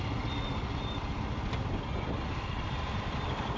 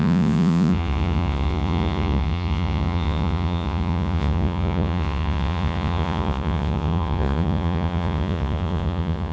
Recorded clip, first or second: first